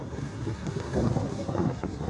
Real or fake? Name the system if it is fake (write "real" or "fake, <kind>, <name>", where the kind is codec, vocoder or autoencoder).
fake, codec, SNAC